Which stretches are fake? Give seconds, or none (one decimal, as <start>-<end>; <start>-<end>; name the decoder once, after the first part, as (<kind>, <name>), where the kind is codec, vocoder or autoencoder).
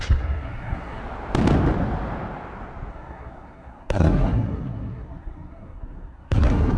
0.0-1.0 (codec, SNAC); 2.9-6.8